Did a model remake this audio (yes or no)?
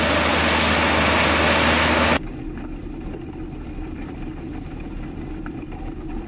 no